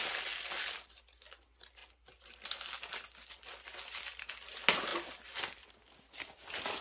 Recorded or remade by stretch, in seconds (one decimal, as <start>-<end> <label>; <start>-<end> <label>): 0.0-6.8 recorded